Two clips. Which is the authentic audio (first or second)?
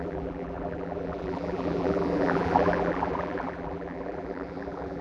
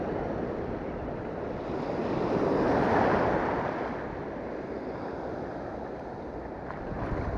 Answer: second